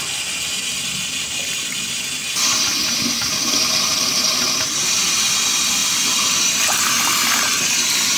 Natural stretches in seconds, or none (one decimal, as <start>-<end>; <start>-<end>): 0.0-8.2